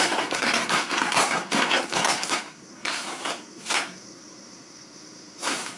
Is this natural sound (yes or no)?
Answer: no